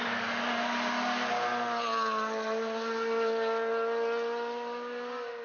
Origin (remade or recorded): recorded